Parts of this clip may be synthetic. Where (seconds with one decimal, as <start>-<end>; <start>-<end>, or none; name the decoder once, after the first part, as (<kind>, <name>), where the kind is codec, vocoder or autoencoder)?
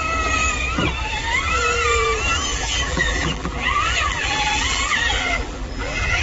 2.5-6.2 (vocoder, BigVGAN v2)